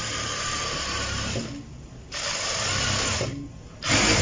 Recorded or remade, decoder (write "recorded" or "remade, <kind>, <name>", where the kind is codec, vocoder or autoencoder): recorded